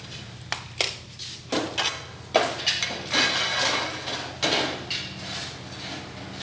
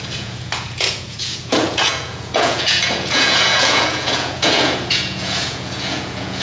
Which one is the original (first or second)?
first